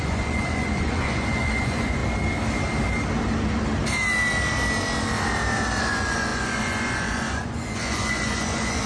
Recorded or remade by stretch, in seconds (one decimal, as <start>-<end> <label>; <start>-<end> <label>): 0.0-2.0 remade; 2.0-5.8 recorded; 5.8-8.9 remade

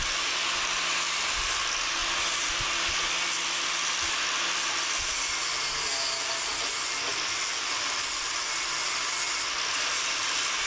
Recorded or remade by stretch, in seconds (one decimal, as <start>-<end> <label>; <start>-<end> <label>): 0.0-10.7 recorded